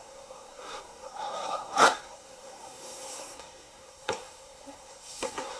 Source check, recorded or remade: remade